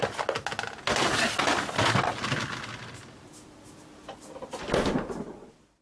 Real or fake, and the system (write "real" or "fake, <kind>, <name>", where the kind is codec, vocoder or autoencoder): real